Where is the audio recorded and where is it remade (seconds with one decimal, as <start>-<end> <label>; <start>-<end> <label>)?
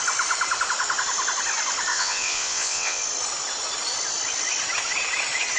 0.0-1.9 recorded; 1.9-3.0 remade; 3.0-5.6 recorded